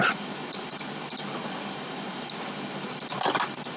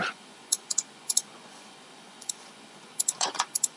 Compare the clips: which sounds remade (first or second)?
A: second